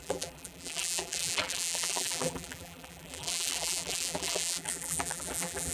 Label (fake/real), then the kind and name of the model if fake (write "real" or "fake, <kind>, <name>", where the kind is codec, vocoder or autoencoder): fake, vocoder, BigVGAN v2